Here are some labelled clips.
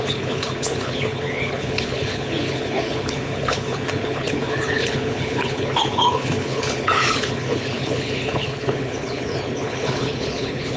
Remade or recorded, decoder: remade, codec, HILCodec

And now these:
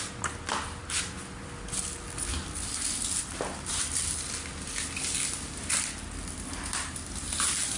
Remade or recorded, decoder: recorded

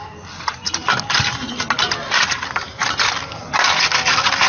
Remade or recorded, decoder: recorded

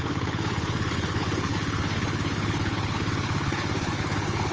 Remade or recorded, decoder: remade, codec, HILCodec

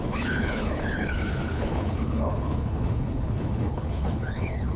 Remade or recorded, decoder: remade, codec, HILCodec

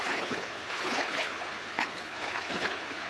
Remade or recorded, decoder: remade, codec, HILCodec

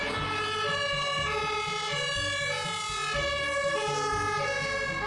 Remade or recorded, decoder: recorded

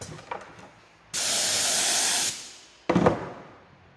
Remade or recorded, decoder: recorded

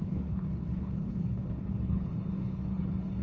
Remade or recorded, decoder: remade, codec, HILCodec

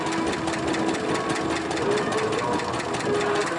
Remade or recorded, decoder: recorded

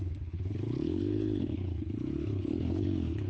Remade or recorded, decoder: remade, codec, HILCodec